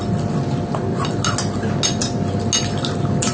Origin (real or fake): real